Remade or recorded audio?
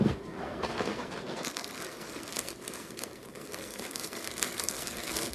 remade